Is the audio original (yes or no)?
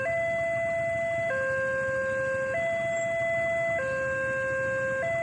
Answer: yes